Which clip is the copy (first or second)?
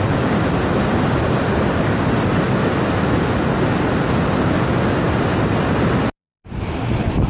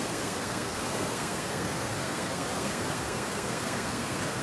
second